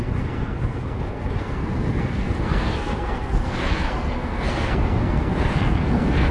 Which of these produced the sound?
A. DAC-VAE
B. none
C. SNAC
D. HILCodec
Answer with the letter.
C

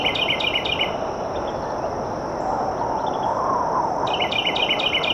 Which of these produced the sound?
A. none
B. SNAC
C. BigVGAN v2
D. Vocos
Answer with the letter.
A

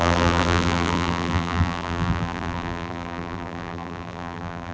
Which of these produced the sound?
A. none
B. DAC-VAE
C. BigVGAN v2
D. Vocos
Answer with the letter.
C